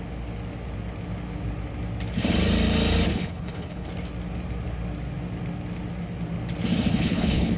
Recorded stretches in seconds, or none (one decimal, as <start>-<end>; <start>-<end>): 0.0-3.1; 3.9-6.9